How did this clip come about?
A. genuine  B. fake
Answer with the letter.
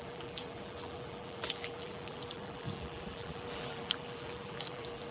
B